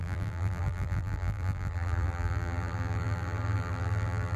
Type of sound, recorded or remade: remade